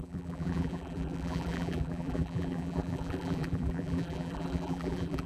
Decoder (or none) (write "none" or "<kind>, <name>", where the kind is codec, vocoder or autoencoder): vocoder, BigVGAN v2